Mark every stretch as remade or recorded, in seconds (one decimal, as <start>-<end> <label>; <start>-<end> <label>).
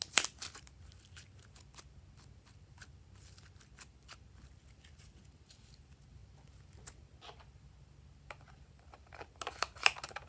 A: 0.0-10.3 recorded